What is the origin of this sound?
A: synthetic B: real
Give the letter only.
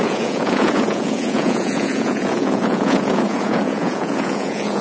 A